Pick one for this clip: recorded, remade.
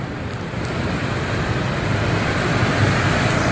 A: recorded